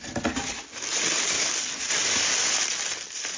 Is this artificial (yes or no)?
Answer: no